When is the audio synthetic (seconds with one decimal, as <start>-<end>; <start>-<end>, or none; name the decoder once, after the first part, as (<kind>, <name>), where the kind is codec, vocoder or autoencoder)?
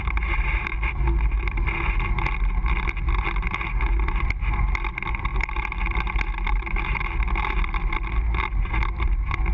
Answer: none